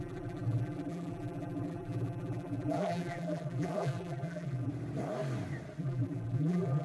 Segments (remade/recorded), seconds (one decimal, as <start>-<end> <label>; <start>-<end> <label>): 0.0-4.7 remade; 4.7-5.8 recorded; 5.8-6.8 remade